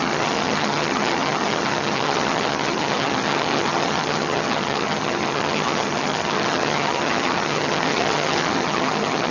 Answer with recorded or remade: remade